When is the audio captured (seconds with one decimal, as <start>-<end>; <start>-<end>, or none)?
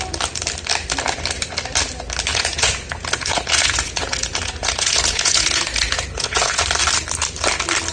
0.0-2.3; 6.6-7.9